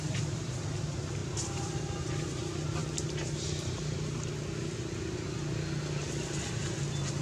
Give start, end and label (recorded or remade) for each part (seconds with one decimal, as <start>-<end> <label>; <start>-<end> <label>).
0.0-2.8 remade; 2.8-6.4 recorded; 6.4-7.2 remade